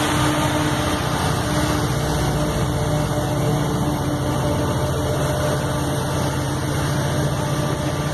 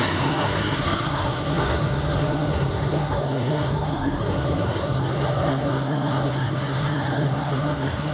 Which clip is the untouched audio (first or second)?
first